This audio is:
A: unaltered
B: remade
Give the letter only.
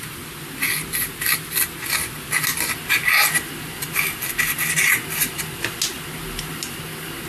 A